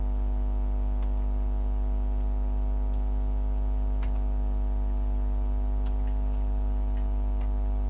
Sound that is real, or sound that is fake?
real